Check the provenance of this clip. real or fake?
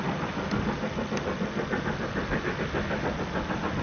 real